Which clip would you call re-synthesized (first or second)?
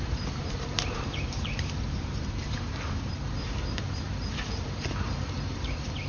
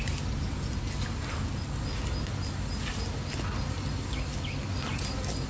first